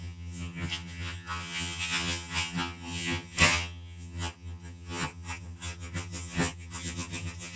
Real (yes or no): no